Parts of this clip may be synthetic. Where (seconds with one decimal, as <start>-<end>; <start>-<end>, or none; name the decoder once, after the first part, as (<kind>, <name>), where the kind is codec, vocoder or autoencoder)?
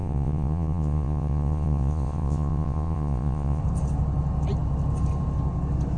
0.0-3.6 (vocoder, Vocos)